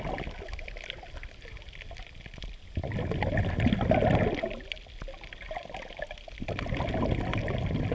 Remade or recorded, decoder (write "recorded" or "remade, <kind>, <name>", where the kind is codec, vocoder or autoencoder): recorded